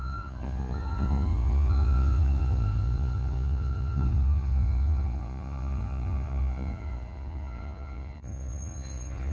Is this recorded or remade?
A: remade